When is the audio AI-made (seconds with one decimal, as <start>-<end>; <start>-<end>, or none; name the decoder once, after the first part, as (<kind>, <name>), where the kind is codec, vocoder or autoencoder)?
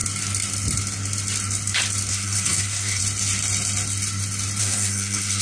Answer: 2.1-3.0 (codec, SNAC); 4.6-5.4